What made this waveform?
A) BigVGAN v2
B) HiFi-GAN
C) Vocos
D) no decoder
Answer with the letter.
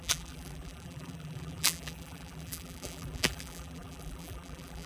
A